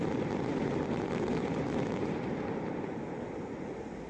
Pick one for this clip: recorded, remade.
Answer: recorded